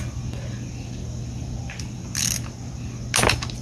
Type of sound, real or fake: real